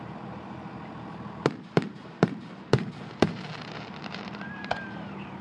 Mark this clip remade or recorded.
remade